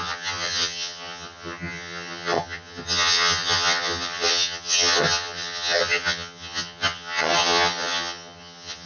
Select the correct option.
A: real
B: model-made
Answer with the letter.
B